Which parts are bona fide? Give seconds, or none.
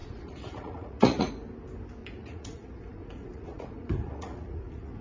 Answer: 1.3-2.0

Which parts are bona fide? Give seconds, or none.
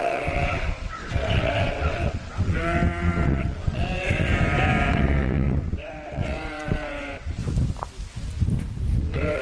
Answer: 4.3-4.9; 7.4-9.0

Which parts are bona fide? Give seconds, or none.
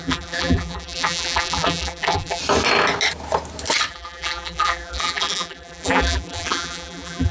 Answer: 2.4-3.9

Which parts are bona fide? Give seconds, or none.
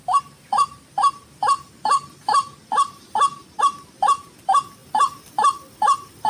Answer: 0.0-6.3